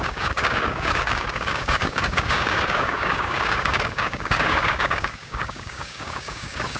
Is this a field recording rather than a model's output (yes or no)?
no